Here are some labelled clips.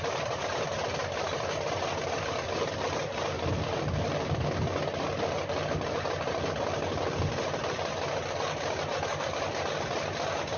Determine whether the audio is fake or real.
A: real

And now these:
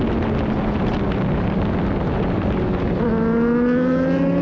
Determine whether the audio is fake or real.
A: real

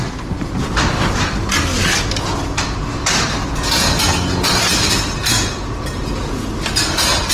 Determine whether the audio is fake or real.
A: real